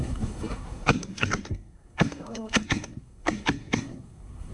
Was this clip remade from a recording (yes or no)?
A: yes